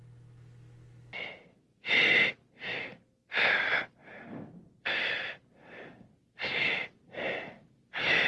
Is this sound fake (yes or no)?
no